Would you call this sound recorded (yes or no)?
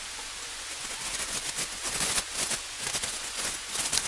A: no